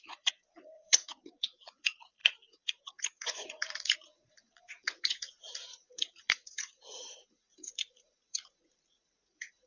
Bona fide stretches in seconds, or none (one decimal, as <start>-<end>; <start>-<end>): none